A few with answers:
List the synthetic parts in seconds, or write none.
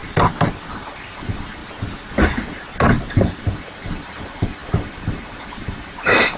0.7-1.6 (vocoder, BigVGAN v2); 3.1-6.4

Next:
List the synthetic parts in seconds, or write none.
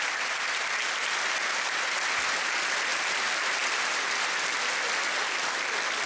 none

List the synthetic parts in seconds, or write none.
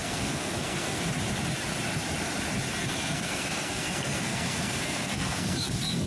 0.0-1.0 (codec, SNAC); 2.8-6.1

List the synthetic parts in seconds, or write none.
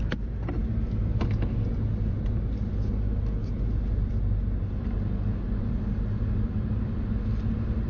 none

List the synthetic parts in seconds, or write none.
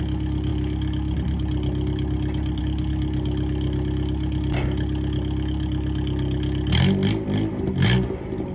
none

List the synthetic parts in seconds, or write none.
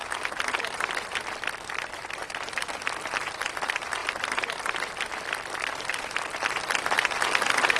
none